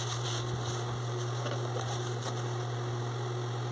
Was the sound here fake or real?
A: fake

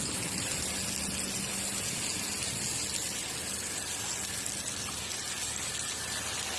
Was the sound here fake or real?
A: real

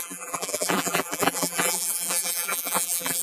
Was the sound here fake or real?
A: fake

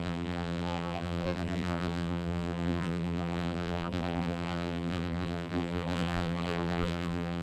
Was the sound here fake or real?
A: fake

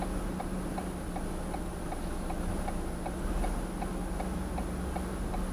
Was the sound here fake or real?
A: real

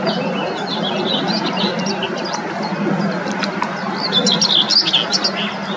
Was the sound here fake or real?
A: real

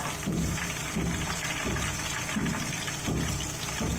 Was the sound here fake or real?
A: fake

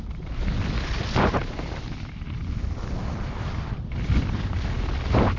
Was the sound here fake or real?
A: real